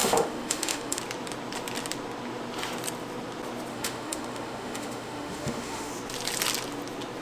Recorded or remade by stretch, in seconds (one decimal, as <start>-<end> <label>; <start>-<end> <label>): 0.0-1.0 remade; 1.0-3.7 recorded; 3.7-5.9 remade; 5.9-7.2 recorded